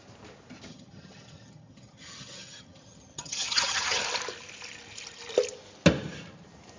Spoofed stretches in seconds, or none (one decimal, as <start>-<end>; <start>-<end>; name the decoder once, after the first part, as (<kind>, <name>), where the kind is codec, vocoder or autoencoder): 0.7-4.0 (vocoder, HiFi-GAN)